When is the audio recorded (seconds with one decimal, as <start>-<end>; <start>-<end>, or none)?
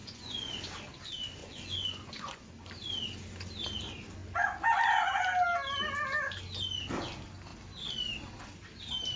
0.5-1.4; 2.5-9.2